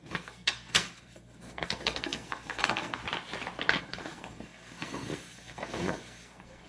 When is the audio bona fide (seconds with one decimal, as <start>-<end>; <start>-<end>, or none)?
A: 3.0-3.8

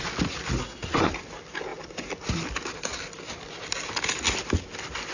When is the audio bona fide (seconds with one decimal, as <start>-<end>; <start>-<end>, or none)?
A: 0.0-0.6; 1.1-5.1